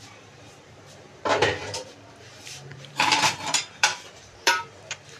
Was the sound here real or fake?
fake